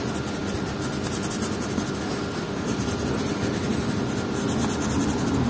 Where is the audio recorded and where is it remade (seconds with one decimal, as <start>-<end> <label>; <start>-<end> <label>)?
0.0-5.5 recorded